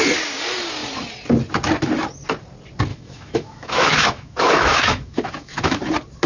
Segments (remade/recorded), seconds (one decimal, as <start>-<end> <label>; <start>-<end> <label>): 0.0-2.9 recorded; 2.9-5.8 remade; 5.8-6.3 recorded